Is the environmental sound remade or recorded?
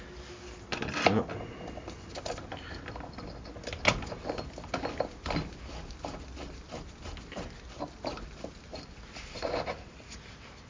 recorded